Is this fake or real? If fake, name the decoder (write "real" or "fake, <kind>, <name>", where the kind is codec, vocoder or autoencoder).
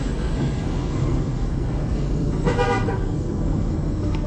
fake, codec, SNAC